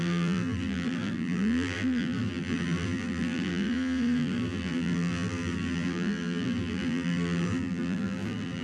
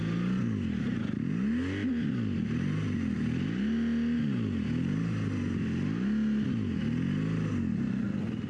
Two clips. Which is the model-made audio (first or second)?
first